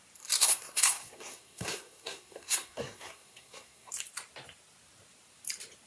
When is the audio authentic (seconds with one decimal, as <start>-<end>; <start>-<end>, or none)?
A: 0.0-0.4; 3.9-5.9